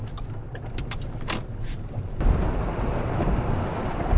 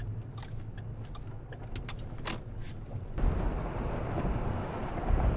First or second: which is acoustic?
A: second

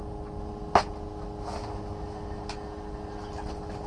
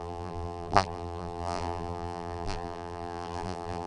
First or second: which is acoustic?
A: first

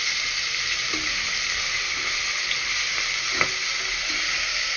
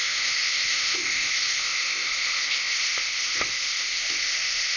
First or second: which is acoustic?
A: first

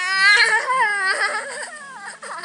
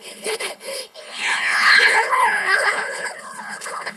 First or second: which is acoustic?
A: first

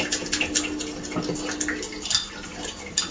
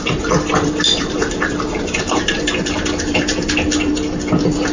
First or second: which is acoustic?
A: first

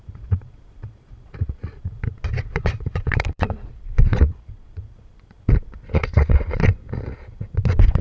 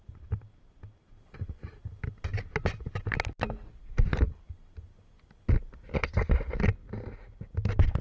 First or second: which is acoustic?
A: second